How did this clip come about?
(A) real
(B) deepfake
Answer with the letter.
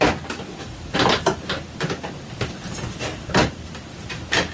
A